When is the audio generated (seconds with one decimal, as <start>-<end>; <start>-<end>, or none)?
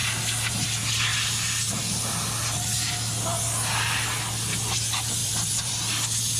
5.2-5.7